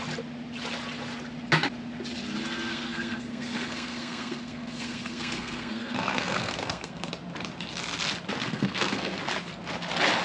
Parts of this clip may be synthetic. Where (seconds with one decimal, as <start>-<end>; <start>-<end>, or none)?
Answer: 2.7-7.1; 8.4-9.2

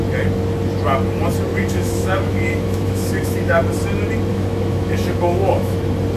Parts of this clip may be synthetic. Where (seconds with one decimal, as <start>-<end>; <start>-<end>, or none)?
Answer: 1.5-3.6; 4.3-5.8